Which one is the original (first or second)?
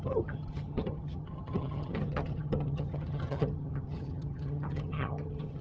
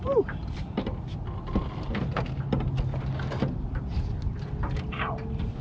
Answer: second